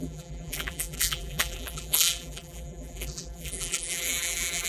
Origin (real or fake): fake